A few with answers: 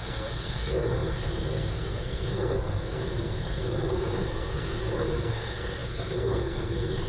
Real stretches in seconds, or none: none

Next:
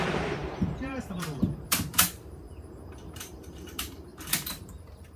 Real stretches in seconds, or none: none

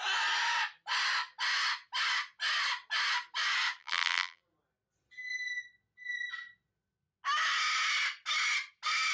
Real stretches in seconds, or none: 0.0-3.8; 4.4-9.1

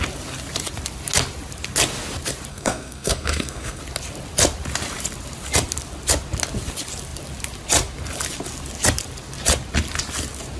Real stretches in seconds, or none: 0.0-2.5; 3.8-10.6

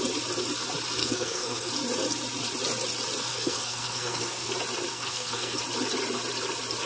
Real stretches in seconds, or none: 0.0-1.0; 1.7-3.3; 4.5-4.9; 5.6-6.9

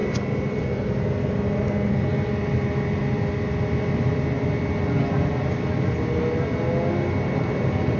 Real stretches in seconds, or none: 0.0-8.0